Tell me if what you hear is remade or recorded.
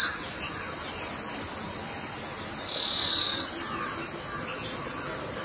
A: recorded